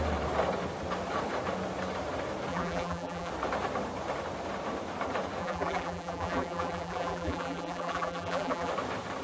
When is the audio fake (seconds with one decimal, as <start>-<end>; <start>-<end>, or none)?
2.5-3.3; 5.4-8.7